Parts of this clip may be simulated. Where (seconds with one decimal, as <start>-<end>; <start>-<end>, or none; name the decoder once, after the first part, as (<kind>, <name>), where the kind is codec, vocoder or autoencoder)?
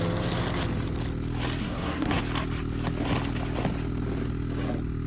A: 1.6-2.2 (codec, SNAC)